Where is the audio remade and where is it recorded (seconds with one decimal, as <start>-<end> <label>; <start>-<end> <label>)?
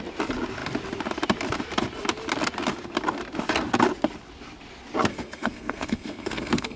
0.0-5.1 recorded; 5.1-6.8 remade